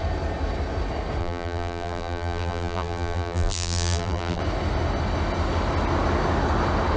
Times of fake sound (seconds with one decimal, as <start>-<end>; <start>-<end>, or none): 1.2-4.4